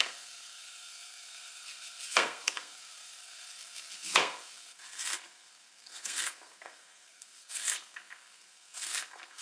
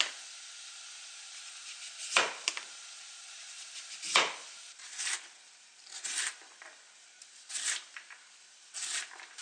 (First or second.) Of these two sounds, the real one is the second